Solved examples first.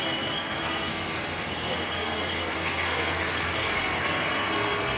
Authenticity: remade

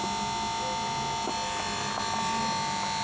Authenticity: recorded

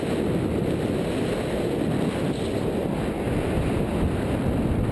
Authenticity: recorded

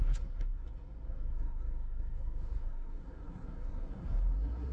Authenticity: remade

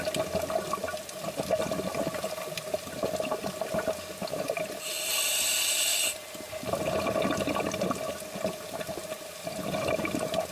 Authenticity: recorded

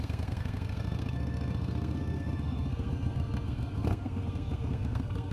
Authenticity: remade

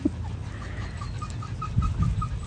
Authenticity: recorded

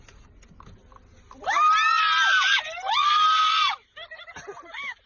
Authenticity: recorded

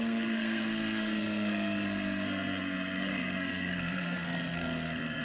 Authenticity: remade